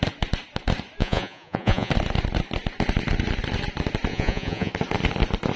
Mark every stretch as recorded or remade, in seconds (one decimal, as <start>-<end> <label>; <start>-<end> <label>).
0.0-1.0 recorded; 1.0-1.9 remade; 1.9-4.1 recorded; 4.1-4.7 remade; 4.7-5.6 recorded